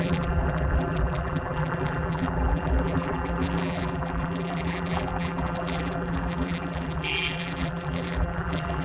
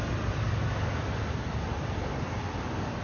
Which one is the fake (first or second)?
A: first